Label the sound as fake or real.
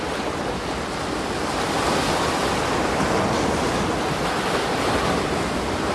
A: real